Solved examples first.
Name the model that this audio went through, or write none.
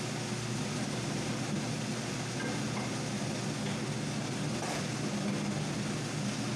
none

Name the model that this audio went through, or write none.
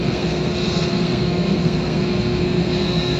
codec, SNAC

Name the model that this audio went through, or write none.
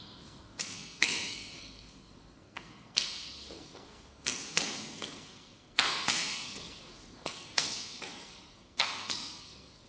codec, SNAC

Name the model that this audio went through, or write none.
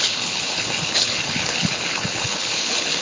codec, HILCodec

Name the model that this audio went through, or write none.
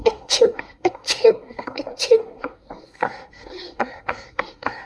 codec, SNAC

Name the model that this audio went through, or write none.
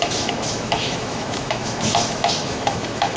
autoencoder, DAC-VAE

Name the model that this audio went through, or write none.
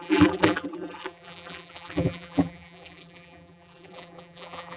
vocoder, BigVGAN v2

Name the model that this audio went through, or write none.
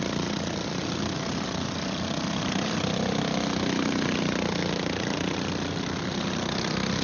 none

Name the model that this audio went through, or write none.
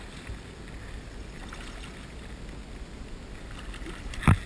none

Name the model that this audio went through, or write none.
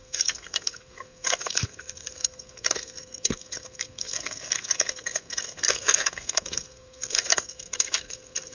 codec, SNAC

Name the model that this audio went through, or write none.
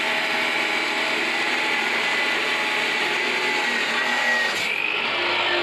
none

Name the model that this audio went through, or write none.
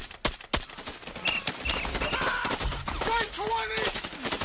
none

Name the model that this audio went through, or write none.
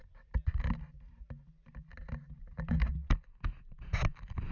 none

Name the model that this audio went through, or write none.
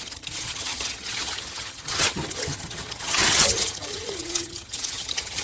vocoder, HiFi-GAN